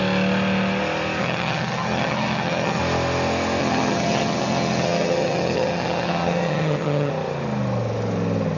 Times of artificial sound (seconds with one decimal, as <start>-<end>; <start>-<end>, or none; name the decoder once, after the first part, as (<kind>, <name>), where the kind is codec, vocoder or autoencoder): 1.2-2.8 (vocoder, HiFi-GAN); 3.6-7.1